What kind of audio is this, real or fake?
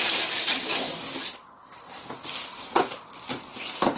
real